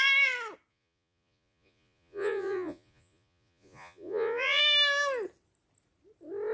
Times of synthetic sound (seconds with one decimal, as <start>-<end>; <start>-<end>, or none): 0.7-4.6